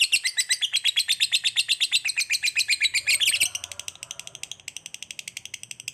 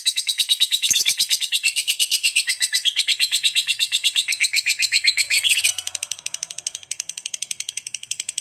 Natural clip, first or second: first